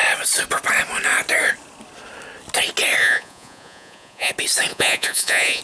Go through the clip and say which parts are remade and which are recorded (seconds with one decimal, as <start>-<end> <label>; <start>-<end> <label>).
0.0-3.0 recorded; 3.0-4.3 remade; 4.3-4.7 recorded; 4.7-5.6 remade